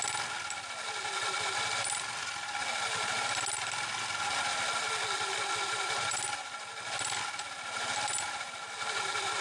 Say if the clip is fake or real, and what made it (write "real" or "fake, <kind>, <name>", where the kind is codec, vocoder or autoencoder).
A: real